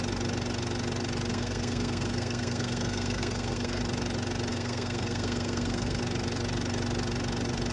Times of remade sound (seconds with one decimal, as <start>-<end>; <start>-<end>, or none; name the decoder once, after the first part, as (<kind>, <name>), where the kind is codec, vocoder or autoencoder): 1.3-3.8 (codec, SNAC); 4.5-6.0